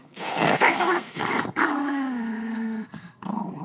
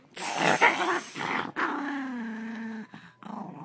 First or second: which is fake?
first